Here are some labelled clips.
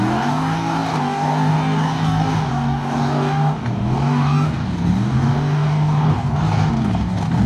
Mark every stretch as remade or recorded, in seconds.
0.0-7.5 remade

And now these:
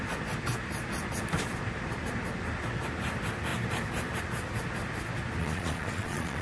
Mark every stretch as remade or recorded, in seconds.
0.0-5.4 recorded; 5.4-6.4 remade